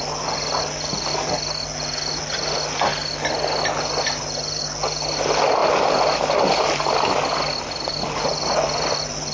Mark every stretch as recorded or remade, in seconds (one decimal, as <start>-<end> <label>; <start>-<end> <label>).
0.0-9.3 recorded